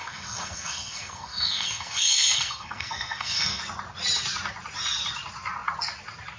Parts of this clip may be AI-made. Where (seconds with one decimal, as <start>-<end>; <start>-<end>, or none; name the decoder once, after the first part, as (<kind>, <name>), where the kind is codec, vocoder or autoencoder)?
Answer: 0.0-3.6 (codec, SNAC)

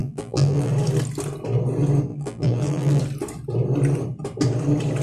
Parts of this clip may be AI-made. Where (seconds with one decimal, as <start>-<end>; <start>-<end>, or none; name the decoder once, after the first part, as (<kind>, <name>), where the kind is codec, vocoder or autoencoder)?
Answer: 0.0-0.7 (vocoder, BigVGAN v2); 2.1-3.0

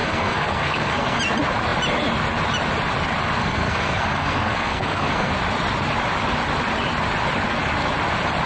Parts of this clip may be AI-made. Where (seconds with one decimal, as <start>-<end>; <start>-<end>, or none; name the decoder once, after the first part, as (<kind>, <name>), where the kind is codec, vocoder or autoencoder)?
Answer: 0.0-1.2 (codec, SNAC); 3.4-5.3

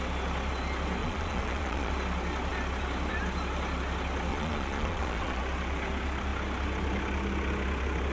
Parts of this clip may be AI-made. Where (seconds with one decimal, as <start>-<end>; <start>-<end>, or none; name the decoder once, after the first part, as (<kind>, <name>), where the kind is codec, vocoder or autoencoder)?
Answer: 1.0-1.9 (vocoder, Vocos); 4.3-5.4

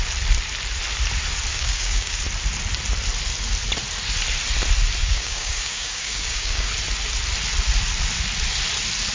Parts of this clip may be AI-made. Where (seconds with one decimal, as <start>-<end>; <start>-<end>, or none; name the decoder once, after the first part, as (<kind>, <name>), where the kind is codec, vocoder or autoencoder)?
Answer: 1.5-2.2 (codec, DAC); 5.0-6.7

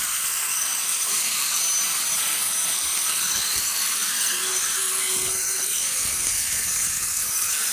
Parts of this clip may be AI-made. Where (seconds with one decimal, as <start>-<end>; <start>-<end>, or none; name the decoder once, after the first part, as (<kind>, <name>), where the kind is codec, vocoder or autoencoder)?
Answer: 0.0-1.6 (codec, SNAC); 2.2-7.7

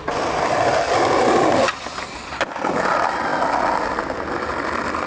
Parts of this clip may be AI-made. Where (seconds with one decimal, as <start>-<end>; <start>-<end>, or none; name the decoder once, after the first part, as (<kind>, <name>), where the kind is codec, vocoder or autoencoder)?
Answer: none